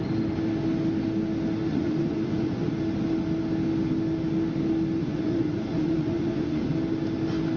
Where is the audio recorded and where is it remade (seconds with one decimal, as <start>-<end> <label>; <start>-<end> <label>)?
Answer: 0.0-1.7 recorded; 1.7-2.7 remade; 2.7-5.0 recorded; 5.0-6.7 remade; 6.7-7.6 recorded